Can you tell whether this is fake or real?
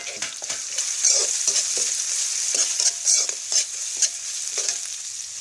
real